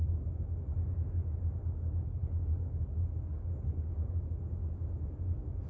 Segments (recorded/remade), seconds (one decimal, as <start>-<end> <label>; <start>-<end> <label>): 0.0-1.6 recorded; 1.6-2.8 remade; 2.8-3.3 recorded; 3.3-4.2 remade; 4.2-5.7 recorded